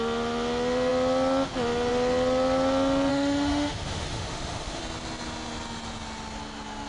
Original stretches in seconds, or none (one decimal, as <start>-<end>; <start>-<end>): 0.0-3.1; 4.8-6.9